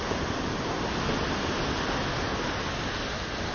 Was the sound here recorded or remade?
recorded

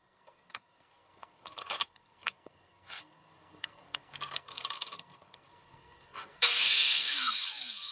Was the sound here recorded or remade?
remade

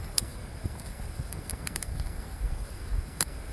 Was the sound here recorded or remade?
remade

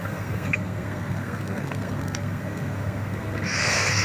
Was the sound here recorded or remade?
remade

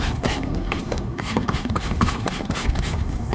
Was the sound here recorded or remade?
remade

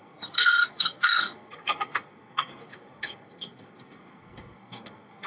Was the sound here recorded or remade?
remade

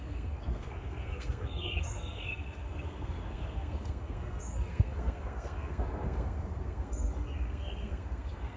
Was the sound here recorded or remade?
remade